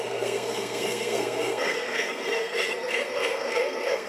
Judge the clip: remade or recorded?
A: remade